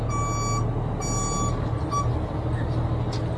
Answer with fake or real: real